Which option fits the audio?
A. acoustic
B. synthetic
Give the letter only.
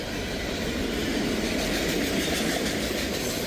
A